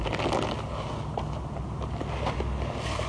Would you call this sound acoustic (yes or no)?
yes